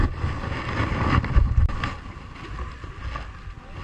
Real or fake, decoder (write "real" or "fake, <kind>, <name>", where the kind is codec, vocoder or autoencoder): real